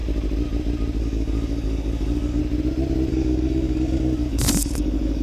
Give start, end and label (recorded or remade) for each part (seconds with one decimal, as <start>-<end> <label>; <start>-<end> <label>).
0.0-1.0 recorded; 1.0-2.4 remade; 2.4-3.1 recorded; 3.1-5.2 remade